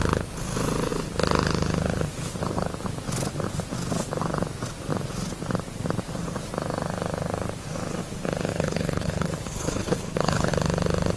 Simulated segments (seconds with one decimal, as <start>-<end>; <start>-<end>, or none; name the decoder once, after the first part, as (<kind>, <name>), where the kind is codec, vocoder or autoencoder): 8.5-10.5 (codec, HILCodec)